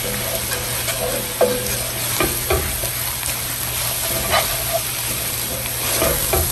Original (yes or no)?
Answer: yes